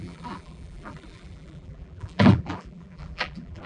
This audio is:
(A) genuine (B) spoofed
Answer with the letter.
B